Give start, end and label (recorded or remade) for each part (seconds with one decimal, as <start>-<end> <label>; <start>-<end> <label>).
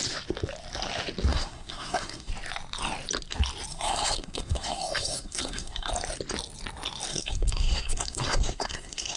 0.0-1.3 recorded; 1.3-2.3 remade; 2.3-3.7 recorded; 3.7-5.9 remade; 5.9-7.1 recorded; 7.1-9.2 remade